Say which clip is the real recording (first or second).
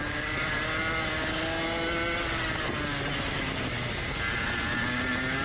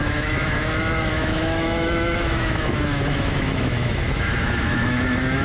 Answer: first